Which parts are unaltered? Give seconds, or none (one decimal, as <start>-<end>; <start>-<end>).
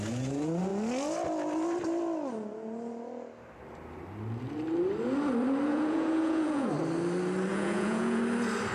0.0-5.7; 6.7-7.5; 8.2-8.7